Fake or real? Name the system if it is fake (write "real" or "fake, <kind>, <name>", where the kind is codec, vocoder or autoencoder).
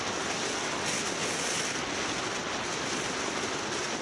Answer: real